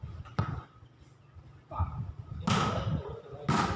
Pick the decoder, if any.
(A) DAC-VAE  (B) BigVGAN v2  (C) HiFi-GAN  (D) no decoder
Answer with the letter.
D